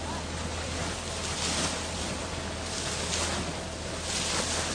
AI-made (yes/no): no